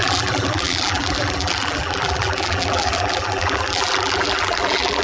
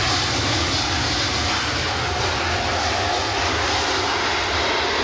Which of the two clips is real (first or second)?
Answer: second